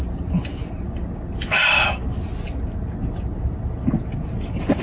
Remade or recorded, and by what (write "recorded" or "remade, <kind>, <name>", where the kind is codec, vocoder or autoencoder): recorded